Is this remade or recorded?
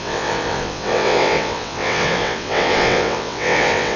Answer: remade